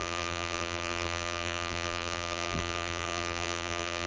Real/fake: fake